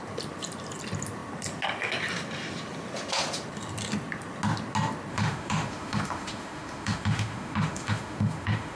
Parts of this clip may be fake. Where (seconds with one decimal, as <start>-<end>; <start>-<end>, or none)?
5.1-8.8